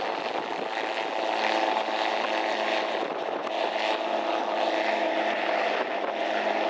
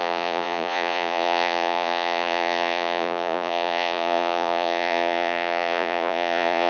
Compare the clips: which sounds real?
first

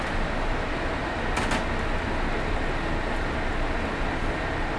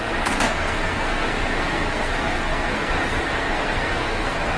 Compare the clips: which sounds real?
first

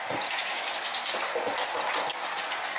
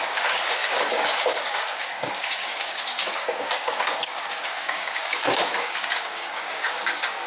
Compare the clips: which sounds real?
first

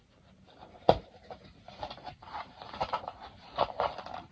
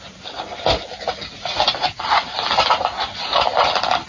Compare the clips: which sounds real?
second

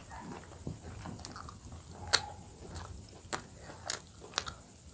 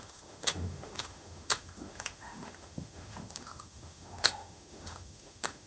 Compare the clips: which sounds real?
first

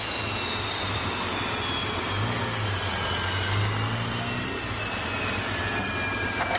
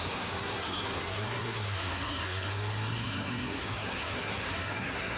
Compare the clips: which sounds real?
first